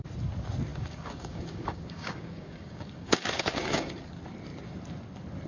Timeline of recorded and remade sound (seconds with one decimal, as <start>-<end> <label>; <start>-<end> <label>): 0.0-0.7 recorded; 0.7-4.0 remade; 4.0-5.5 recorded